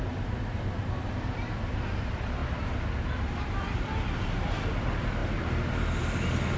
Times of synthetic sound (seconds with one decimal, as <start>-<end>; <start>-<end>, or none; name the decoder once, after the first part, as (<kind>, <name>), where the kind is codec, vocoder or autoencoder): none